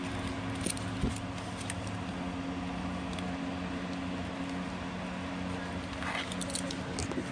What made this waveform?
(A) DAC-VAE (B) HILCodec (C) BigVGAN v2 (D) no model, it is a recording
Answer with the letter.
D